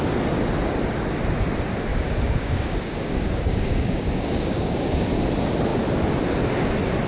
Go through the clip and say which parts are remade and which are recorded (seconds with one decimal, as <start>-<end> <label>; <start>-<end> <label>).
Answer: 0.0-1.9 recorded; 1.9-5.1 remade; 5.1-7.1 recorded